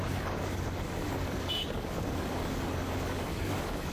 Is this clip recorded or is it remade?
remade